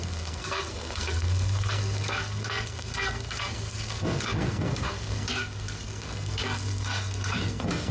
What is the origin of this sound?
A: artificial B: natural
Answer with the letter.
A